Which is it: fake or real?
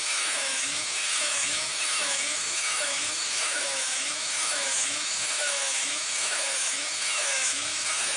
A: fake